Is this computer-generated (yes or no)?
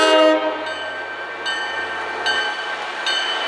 no